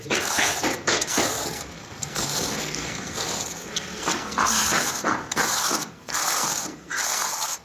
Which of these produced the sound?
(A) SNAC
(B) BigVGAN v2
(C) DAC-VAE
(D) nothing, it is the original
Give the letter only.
A